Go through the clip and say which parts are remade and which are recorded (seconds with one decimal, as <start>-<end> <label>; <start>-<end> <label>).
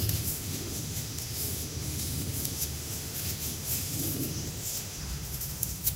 0.0-6.0 remade